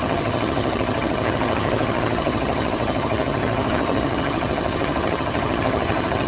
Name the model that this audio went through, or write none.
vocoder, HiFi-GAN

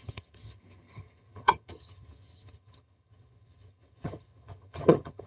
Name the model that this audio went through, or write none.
vocoder, HiFi-GAN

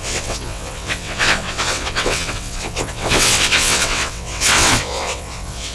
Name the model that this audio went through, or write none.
vocoder, WaveNeXt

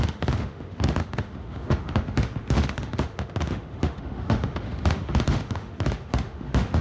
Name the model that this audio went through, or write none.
autoencoder, DAC-VAE